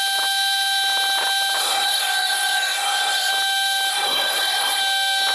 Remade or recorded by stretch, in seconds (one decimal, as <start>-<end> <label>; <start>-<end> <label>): 0.0-1.6 recorded; 1.6-3.3 remade; 3.3-3.9 recorded; 3.9-4.8 remade; 4.8-5.3 recorded